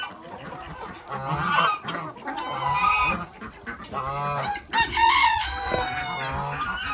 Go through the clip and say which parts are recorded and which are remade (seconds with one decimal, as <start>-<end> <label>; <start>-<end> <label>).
0.0-5.0 recorded; 5.0-5.7 remade; 5.7-6.9 recorded